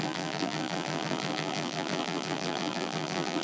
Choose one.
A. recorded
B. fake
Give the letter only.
B